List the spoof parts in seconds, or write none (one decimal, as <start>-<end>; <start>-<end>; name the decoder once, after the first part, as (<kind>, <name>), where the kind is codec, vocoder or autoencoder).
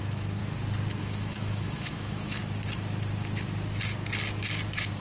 0.0-0.4 (autoencoder, DAC-VAE); 1.0-2.4